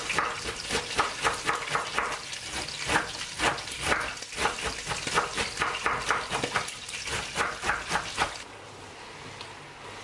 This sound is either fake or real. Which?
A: real